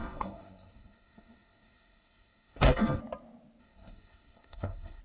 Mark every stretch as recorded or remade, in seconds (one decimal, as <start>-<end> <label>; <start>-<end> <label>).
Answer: 0.0-3.0 remade; 3.0-3.6 recorded; 3.6-5.0 remade